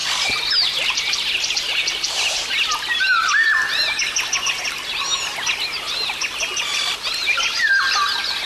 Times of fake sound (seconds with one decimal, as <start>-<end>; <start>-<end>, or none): none